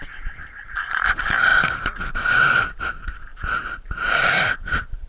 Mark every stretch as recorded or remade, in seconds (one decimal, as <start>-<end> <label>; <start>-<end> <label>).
0.0-5.1 remade